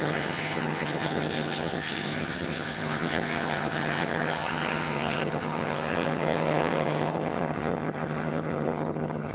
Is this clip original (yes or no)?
no